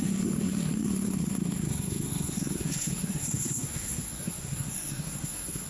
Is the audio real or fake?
fake